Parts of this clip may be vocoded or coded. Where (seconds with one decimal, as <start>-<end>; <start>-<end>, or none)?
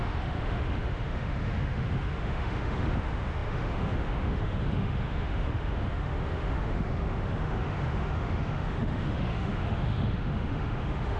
0.0-11.2